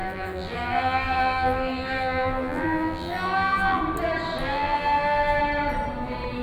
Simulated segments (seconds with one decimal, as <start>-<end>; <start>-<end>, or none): 0.0-3.8; 4.4-5.4